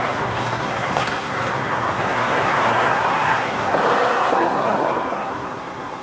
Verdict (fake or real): fake